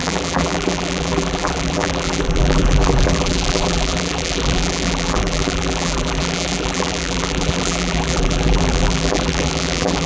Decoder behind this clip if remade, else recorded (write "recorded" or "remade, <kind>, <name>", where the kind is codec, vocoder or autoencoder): remade, vocoder, BigVGAN v2